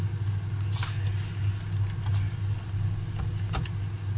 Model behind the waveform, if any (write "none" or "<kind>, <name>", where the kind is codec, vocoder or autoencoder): none